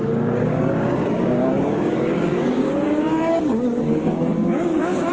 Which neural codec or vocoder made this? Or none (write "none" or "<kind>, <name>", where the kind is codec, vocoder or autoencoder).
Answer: codec, DAC